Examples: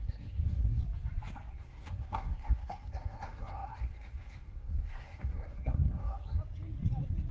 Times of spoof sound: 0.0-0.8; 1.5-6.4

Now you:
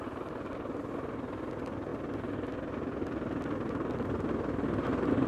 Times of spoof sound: none

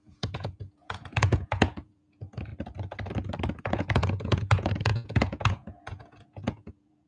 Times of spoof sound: 0.0-2.5; 3.6-7.1

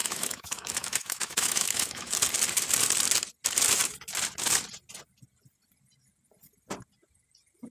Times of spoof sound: 0.0-2.1

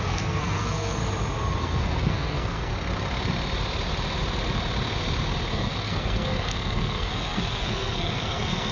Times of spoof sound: 0.0-1.0; 1.6-2.7; 5.5-8.7

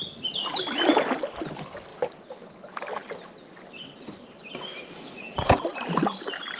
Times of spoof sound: none